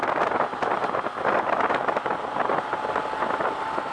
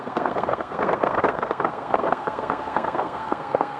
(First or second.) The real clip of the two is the first